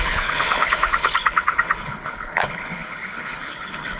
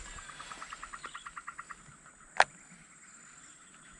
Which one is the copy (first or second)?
first